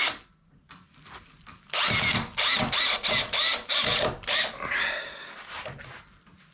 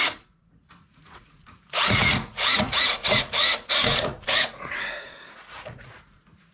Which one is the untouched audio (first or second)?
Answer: first